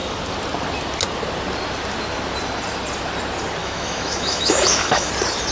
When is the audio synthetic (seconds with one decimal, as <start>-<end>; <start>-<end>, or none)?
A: 3.6-5.1